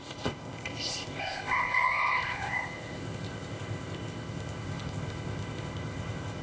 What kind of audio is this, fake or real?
fake